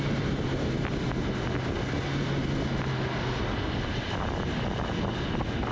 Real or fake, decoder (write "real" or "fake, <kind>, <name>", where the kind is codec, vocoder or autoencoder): real